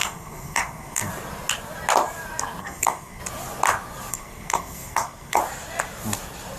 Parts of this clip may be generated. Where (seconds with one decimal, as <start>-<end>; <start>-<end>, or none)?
0.0-1.1; 2.6-3.2; 4.1-5.4